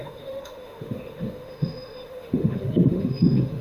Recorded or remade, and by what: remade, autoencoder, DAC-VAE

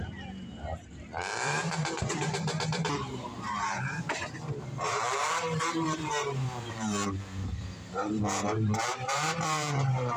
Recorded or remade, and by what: remade, vocoder, BigVGAN v2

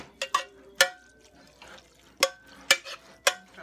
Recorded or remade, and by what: recorded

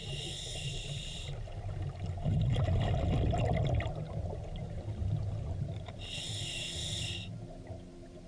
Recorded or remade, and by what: recorded